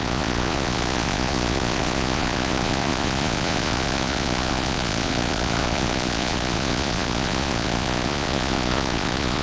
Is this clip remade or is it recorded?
remade